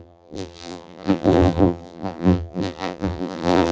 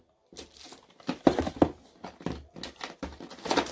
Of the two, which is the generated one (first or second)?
first